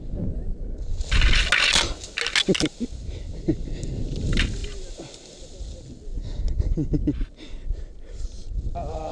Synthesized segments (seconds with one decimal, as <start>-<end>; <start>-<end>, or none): none

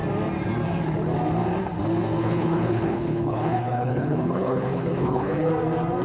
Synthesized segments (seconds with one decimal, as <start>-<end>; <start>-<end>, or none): 2.2-5.5